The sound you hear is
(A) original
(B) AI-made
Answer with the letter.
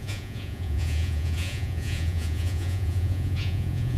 B